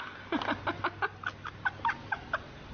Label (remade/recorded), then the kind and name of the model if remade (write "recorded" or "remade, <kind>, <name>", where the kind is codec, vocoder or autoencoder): recorded